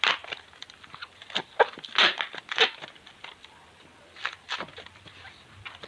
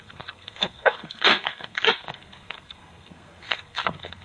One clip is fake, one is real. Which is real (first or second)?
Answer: first